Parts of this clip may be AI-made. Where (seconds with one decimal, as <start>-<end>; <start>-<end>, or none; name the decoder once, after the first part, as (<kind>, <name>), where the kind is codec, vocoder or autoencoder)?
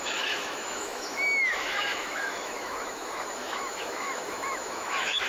0.0-5.3 (autoencoder, DAC-VAE)